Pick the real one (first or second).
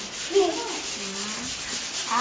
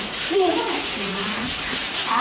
first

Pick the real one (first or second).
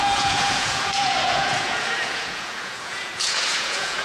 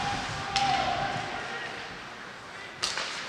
second